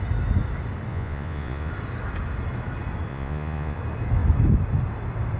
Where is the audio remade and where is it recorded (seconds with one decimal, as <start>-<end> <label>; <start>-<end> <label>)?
0.0-0.9 recorded; 0.9-1.7 remade; 1.7-3.1 recorded; 3.1-3.8 remade; 3.8-5.4 recorded